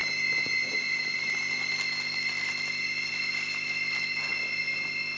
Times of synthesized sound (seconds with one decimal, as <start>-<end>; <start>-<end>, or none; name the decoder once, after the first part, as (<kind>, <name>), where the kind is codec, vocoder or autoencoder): none